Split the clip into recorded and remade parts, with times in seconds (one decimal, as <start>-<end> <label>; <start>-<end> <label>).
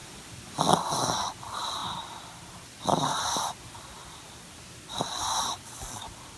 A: 0.0-1.8 recorded; 1.8-3.3 remade; 3.3-4.0 recorded; 4.0-5.7 remade; 5.7-6.4 recorded